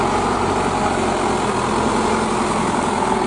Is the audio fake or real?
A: real